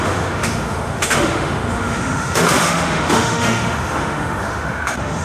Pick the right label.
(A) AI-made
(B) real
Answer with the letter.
A